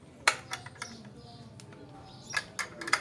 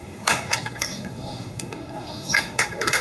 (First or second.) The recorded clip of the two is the first